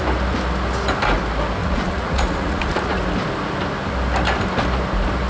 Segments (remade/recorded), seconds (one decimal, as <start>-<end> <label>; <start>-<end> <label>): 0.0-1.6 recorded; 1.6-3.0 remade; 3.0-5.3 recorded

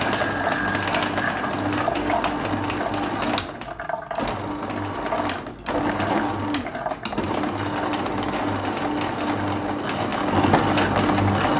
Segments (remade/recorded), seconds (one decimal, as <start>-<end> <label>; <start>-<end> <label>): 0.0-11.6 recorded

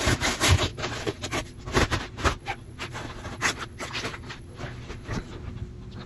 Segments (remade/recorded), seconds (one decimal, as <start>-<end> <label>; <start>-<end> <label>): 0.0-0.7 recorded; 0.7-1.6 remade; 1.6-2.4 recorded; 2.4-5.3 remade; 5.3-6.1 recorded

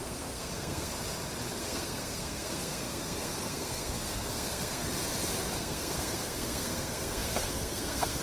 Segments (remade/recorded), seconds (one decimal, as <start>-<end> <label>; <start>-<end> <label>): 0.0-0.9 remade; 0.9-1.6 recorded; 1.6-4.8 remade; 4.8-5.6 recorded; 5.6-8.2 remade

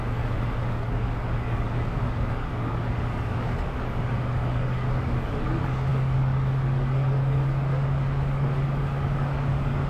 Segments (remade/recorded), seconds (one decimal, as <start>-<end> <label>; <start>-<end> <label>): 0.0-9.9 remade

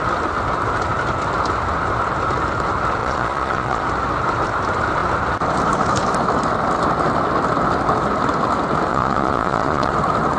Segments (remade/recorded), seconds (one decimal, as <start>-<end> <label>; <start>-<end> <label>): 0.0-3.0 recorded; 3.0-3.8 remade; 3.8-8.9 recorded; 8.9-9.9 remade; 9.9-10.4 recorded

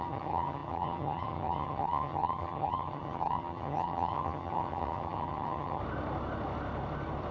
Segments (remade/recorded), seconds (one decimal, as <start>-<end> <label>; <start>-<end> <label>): 0.0-5.8 remade; 5.8-7.3 recorded

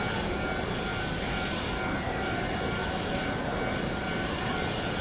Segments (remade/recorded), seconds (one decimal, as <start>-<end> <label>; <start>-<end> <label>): 0.0-2.8 recorded; 2.8-3.4 remade; 3.4-5.0 recorded